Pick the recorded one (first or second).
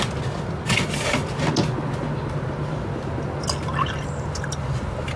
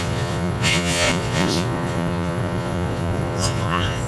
first